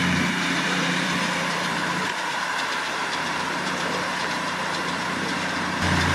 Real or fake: fake